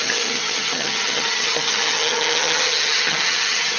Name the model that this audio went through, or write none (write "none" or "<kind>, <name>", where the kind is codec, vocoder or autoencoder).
vocoder, HiFi-GAN